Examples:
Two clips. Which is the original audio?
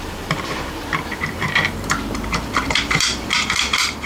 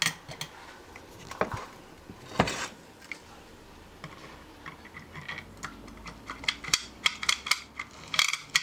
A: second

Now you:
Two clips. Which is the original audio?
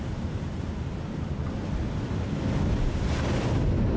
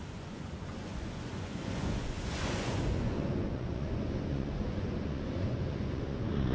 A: first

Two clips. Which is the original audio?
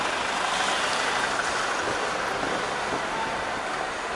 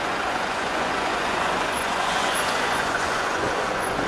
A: first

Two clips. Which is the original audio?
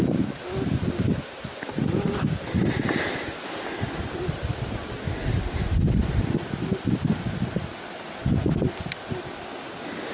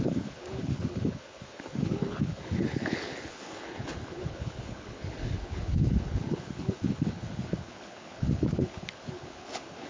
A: first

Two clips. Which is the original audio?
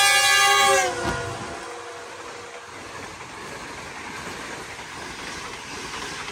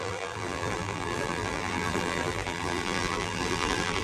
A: first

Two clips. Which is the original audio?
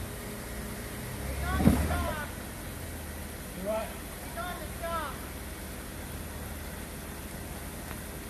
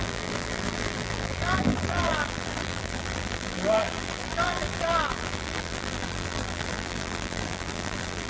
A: first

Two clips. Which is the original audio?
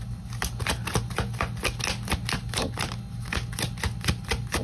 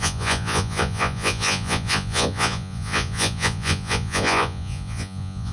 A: first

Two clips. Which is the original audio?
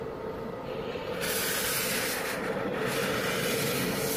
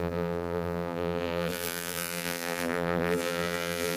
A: first